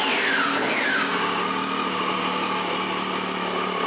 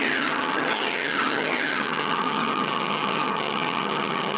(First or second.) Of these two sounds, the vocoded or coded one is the second